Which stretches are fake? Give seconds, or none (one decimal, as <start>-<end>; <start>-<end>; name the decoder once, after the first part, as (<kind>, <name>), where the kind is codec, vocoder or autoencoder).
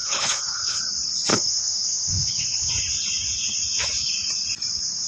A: 0.0-0.8 (codec, HILCodec); 1.3-2.7